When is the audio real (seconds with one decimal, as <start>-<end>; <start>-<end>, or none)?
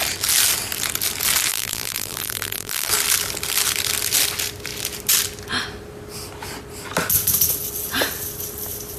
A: 0.0-1.5; 2.9-9.0